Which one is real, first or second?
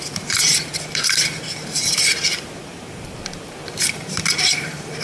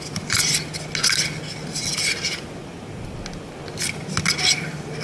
second